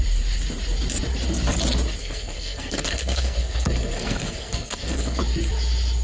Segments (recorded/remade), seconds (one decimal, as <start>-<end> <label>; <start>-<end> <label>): 0.0-2.0 recorded; 2.0-5.2 remade; 5.2-6.0 recorded